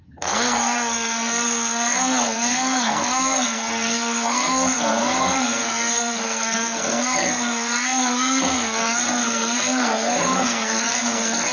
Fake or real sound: fake